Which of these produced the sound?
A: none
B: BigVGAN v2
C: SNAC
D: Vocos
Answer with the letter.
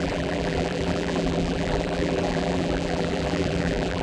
B